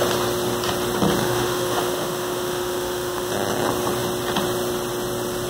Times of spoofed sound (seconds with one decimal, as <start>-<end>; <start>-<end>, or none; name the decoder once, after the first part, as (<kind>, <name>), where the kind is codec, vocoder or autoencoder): 1.2-3.3 (autoencoder, DAC-VAE)